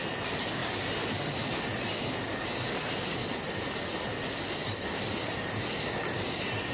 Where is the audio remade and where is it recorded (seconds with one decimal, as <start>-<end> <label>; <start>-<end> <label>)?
0.0-6.7 recorded